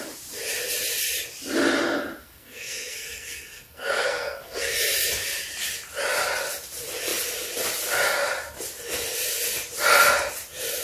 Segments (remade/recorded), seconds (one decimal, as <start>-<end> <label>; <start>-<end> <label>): 0.0-2.2 recorded; 2.2-4.7 remade; 4.7-10.8 recorded